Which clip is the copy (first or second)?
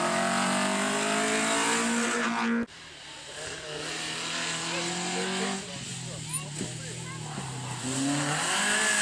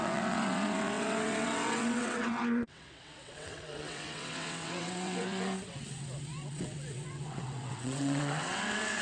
second